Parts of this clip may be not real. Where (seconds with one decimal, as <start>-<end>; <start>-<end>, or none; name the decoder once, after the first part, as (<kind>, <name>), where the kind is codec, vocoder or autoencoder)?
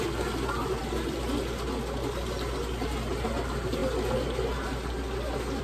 0.8-1.4 (vocoder, BigVGAN v2)